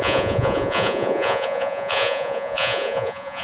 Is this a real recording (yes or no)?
no